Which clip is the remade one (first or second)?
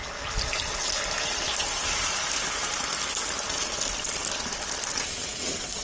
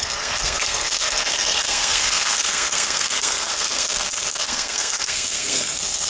second